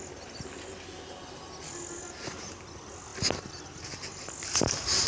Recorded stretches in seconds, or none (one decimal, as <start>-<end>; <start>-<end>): 0.0-5.1